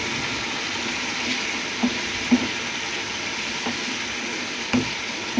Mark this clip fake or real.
real